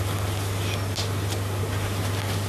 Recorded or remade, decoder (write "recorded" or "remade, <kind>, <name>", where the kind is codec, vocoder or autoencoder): recorded